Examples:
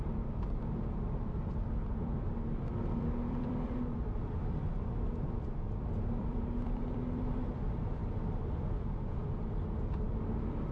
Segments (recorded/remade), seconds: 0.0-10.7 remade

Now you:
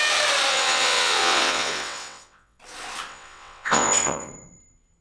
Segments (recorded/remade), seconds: 0.0-0.5 recorded; 0.5-2.6 remade; 2.6-3.1 recorded; 3.1-4.3 remade; 4.3-5.0 recorded